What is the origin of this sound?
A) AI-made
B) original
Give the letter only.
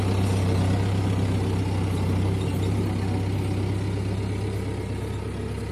B